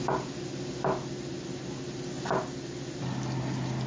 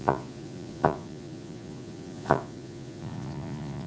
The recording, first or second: first